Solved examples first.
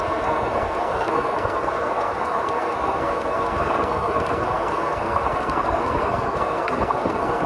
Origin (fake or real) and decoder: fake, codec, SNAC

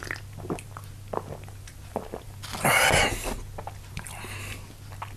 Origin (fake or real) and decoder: real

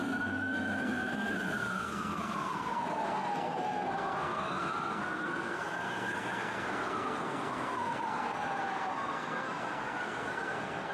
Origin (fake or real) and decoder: fake, codec, SNAC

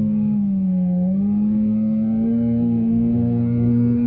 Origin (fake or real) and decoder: fake, codec, SNAC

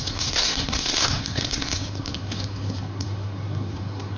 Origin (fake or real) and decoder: fake, codec, SNAC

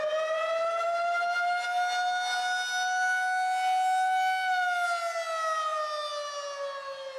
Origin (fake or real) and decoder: real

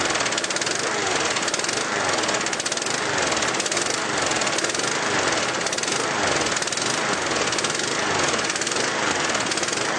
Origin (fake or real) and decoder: real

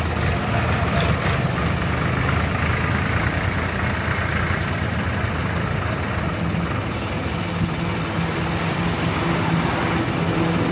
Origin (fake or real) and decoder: real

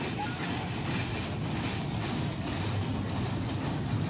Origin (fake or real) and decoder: real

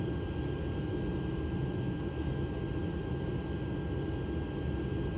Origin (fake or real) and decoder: real